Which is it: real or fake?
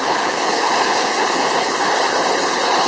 fake